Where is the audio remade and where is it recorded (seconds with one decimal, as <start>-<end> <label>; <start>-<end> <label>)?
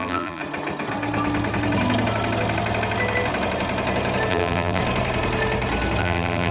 0.0-0.4 remade; 0.4-4.3 recorded; 4.3-4.8 remade; 4.8-6.0 recorded; 6.0-6.5 remade